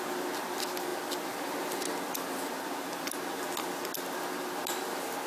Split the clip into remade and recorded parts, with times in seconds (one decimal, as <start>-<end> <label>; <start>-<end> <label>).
0.0-5.3 recorded